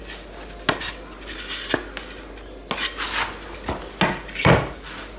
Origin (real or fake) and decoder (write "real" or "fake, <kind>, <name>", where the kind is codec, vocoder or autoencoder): real